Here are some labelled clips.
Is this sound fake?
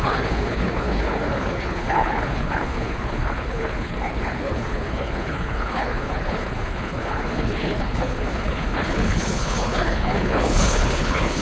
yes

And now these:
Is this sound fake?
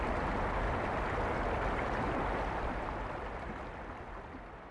no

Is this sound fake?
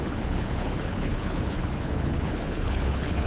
yes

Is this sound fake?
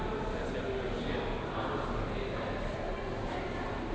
no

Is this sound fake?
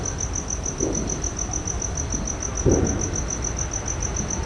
no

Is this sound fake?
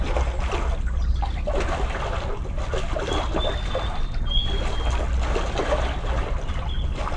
no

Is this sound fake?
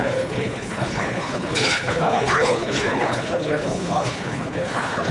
yes